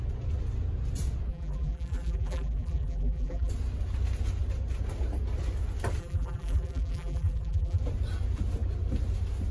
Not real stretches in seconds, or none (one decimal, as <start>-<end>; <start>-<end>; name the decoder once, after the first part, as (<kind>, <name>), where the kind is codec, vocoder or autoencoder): 1.3-3.5 (vocoder, BigVGAN v2); 6.0-7.8